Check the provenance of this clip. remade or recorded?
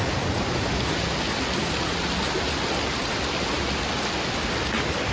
recorded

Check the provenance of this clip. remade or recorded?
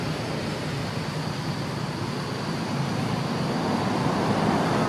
recorded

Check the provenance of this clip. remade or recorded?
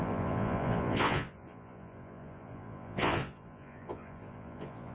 remade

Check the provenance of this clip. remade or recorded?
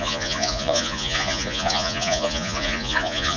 remade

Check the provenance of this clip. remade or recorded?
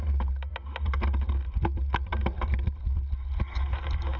recorded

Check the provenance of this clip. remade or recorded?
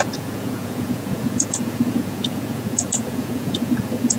remade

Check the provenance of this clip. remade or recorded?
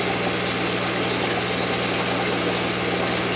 recorded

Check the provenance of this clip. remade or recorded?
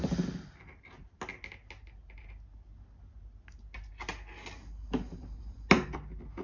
recorded